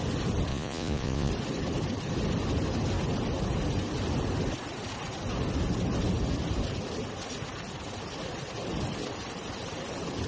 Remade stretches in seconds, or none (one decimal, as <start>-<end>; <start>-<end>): 0.5-1.3